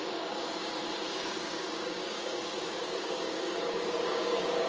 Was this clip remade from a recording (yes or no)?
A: yes